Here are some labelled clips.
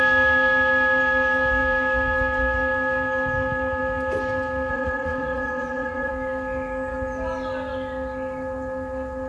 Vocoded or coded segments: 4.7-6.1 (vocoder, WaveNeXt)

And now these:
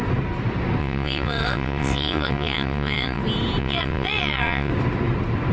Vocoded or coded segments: 0.8-3.2 (vocoder, WaveNeXt); 3.6-4.7

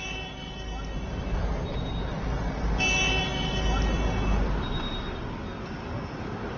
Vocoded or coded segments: none